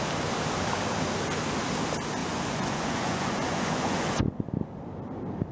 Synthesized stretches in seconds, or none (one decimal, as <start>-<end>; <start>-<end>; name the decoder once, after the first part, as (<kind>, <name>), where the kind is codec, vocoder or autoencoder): 2.2-4.5 (vocoder, Vocos)